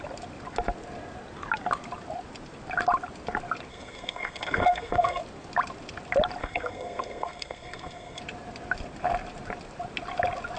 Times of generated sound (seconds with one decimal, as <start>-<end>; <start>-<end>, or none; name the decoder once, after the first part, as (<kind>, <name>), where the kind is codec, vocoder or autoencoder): 3.7-5.2 (codec, SNAC); 6.4-8.2